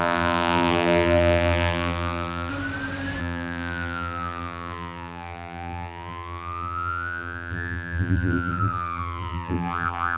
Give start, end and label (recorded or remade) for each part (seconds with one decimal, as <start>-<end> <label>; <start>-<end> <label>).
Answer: 0.0-2.5 remade; 2.5-3.2 recorded; 3.2-10.2 remade